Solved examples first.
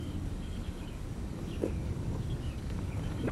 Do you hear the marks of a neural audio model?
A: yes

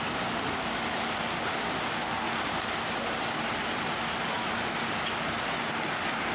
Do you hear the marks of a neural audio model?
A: no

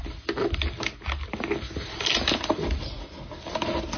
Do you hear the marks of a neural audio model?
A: no